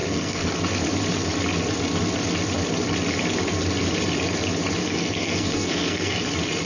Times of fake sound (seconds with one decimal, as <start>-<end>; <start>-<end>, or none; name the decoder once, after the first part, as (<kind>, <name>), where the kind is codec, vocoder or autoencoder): 0.0-0.5 (codec, SNAC); 4.8-6.2